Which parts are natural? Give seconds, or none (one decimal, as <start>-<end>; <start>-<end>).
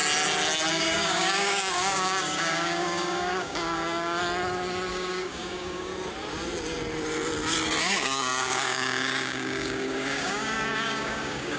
0.0-0.7; 4.2-4.9; 5.9-7.8